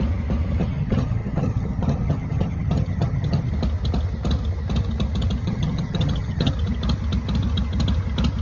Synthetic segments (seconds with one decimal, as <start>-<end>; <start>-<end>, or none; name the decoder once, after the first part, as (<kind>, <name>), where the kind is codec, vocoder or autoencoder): 0.6-3.5 (vocoder, HiFi-GAN); 5.4-6.5

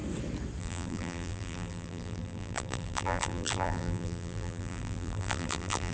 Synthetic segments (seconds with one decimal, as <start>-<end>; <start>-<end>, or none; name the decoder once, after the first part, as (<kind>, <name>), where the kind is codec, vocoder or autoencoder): 0.6-5.9 (vocoder, BigVGAN v2)

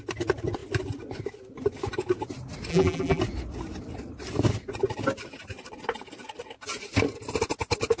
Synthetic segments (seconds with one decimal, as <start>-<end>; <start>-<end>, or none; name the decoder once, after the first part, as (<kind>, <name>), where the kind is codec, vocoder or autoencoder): 2.7-3.2 (vocoder, BigVGAN v2)

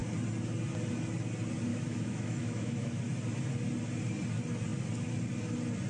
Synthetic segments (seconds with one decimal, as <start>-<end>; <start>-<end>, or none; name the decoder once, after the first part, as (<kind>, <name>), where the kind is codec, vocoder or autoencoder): 1.7-3.0 (autoencoder, DAC-VAE)

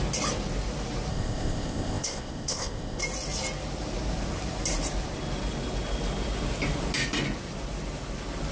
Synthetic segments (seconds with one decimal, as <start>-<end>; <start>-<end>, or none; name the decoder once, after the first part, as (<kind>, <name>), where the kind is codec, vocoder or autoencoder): 1.1-3.0 (codec, ZipCodec)

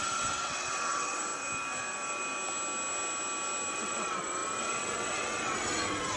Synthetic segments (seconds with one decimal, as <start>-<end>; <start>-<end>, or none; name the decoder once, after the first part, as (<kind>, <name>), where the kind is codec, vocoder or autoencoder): 0.0-1.3 (vocoder, WaveNeXt); 3.7-6.2

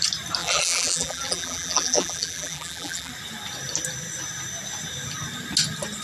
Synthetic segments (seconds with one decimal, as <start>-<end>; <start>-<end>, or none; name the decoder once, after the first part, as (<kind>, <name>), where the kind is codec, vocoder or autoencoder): 0.4-3.1 (vocoder, BigVGAN v2)